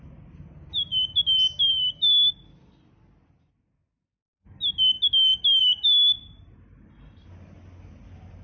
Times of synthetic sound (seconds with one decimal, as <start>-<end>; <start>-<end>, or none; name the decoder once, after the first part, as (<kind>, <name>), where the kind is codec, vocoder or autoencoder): none

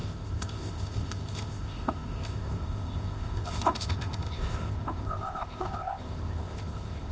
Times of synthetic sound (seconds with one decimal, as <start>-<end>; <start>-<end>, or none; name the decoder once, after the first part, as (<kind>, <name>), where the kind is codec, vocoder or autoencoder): 0.0-7.1 (codec, ZipCodec)

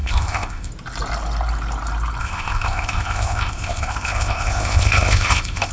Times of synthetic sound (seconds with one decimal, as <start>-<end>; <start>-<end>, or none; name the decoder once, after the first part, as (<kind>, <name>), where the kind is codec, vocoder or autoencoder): 0.0-0.7 (codec, ZipCodec); 2.2-5.7

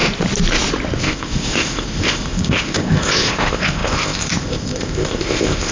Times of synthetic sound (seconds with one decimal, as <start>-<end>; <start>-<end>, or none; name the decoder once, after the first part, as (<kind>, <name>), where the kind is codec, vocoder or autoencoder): 1.0-5.7 (codec, ZipCodec)

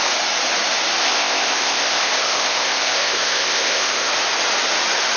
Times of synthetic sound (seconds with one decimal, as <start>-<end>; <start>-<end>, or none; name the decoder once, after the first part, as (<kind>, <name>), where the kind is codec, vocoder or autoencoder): 1.0-4.1 (codec, ZipCodec)